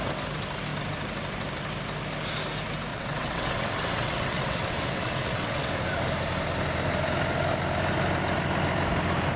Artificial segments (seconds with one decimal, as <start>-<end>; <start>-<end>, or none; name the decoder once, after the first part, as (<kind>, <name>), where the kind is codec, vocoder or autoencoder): 2.9-5.7 (vocoder, WaveNeXt)